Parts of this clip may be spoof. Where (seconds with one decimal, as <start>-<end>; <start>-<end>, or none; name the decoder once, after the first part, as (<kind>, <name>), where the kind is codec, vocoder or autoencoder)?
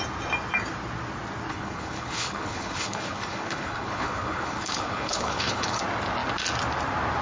1.5-5.8 (codec, HILCodec)